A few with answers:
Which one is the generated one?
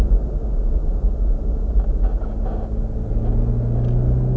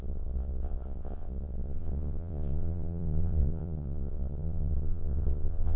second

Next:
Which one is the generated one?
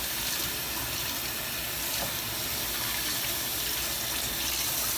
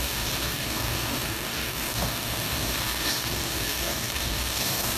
second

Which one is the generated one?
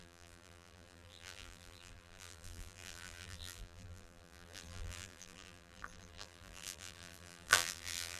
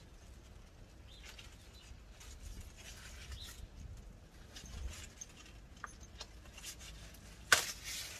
first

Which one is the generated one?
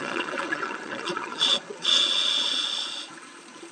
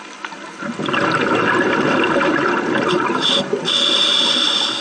first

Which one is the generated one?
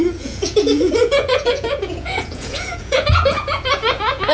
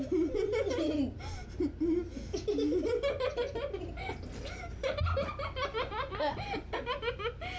first